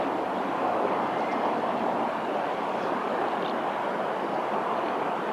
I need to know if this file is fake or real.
real